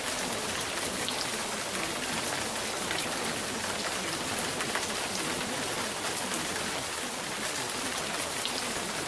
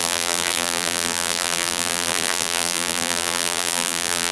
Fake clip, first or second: second